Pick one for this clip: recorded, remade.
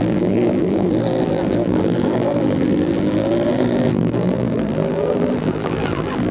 remade